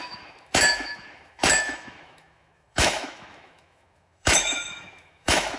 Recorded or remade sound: remade